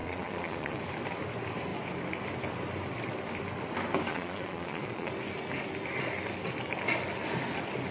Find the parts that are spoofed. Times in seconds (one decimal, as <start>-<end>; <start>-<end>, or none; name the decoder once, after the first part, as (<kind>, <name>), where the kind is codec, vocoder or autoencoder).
0.0-0.8 (vocoder, Vocos); 4.1-5.1